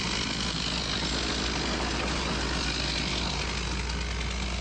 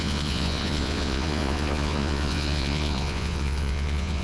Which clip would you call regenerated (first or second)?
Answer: second